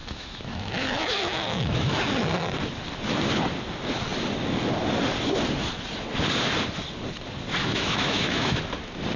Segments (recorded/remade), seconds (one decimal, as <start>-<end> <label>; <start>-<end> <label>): 0.0-2.0 remade; 2.0-7.6 recorded; 7.6-8.6 remade; 8.6-9.2 recorded

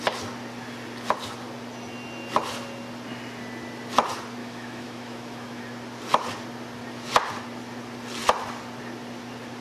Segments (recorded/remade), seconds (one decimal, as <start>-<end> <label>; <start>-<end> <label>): 0.0-4.4 recorded; 4.4-5.6 remade; 5.6-9.6 recorded

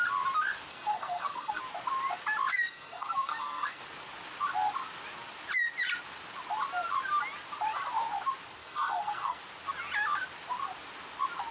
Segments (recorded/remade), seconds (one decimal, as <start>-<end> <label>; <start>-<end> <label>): 0.0-0.7 recorded; 0.7-1.6 remade; 1.6-2.5 recorded; 2.5-3.8 remade; 3.8-8.6 recorded; 8.6-9.4 remade; 9.4-11.5 recorded

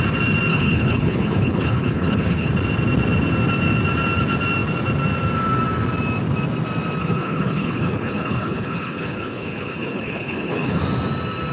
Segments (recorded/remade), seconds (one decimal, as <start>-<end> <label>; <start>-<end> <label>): 0.0-0.5 recorded; 0.5-2.5 remade; 2.5-7.0 recorded; 7.0-10.8 remade; 10.8-11.5 recorded